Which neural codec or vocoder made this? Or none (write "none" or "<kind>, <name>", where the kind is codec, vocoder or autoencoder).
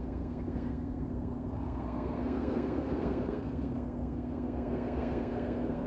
codec, SNAC